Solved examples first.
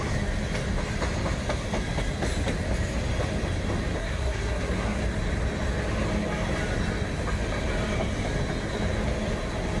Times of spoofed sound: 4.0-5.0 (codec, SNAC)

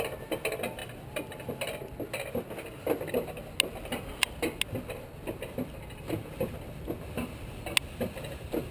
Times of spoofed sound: none

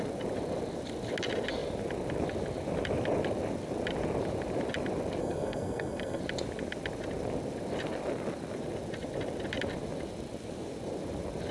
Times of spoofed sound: 5.2-6.2 (codec, SNAC)

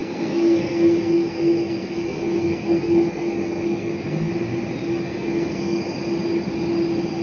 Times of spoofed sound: 0.0-4.3 (codec, SNAC); 4.9-5.8

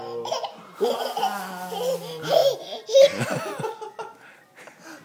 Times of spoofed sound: none

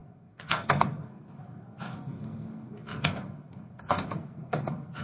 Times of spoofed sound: 0.0-5.0 (codec, SNAC)

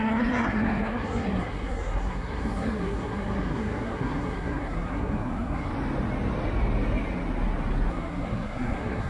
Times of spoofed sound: 0.0-5.7 (codec, SNAC); 7.9-9.1